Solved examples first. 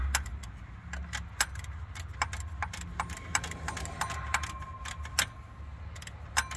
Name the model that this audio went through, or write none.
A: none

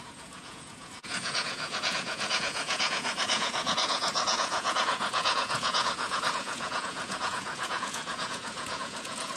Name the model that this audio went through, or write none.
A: vocoder, Vocos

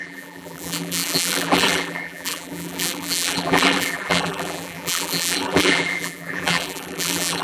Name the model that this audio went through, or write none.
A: vocoder, BigVGAN v2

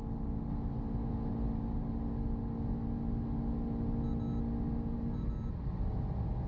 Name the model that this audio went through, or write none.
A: none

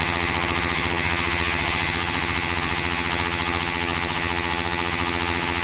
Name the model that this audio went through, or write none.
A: vocoder, HiFi-GAN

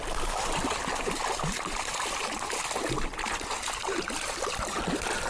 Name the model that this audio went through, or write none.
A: none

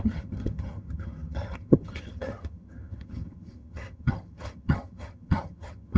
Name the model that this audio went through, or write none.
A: vocoder, HiFi-GAN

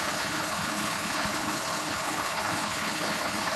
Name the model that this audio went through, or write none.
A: codec, HILCodec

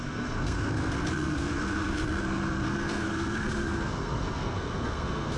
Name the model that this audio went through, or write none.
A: codec, SNAC